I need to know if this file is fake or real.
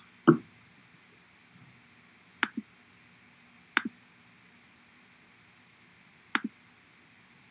real